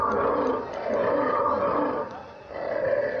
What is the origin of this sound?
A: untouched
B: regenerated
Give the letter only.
A